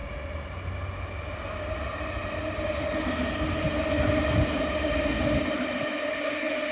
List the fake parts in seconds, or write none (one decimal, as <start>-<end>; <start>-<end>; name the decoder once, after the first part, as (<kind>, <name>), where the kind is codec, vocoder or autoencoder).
none